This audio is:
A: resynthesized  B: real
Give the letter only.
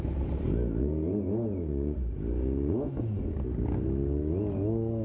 B